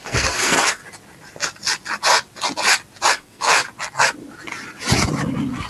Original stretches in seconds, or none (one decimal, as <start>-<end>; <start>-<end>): 0.8-3.1; 3.5-5.7